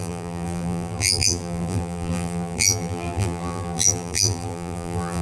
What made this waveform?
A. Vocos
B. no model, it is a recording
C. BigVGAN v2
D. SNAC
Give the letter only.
C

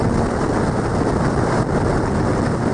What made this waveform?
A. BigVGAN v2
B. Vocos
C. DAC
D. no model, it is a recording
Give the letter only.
D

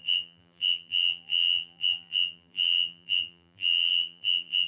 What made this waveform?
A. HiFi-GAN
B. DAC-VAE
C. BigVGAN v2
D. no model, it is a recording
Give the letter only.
C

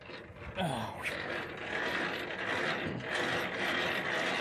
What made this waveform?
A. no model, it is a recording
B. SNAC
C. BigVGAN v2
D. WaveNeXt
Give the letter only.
A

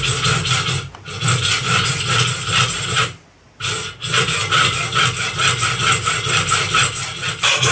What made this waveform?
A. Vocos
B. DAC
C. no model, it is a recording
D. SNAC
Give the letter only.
C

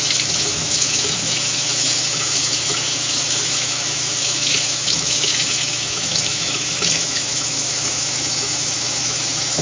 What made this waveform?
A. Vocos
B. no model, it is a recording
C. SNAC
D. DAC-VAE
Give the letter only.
D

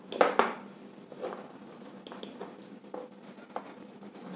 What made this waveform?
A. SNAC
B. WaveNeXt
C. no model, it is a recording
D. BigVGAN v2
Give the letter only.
C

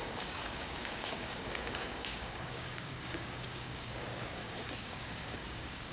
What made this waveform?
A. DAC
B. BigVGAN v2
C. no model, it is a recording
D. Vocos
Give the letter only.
A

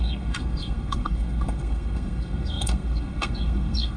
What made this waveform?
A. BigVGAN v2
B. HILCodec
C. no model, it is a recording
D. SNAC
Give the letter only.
D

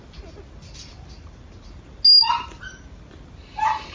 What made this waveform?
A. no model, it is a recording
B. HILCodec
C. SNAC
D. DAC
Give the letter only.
A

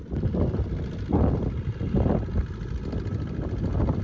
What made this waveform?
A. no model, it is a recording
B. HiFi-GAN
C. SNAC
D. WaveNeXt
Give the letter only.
A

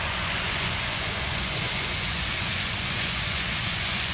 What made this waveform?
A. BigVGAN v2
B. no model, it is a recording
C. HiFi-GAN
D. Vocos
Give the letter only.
D